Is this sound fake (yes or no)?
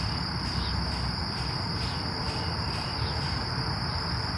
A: yes